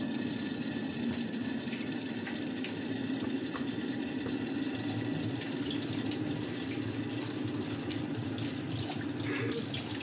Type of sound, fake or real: real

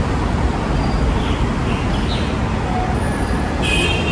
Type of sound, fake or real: real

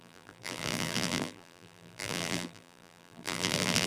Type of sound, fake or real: fake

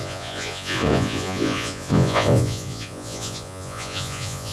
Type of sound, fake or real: fake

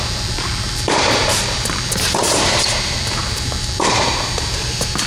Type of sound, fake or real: fake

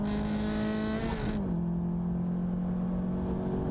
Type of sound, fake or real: real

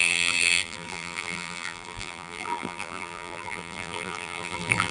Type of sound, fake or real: fake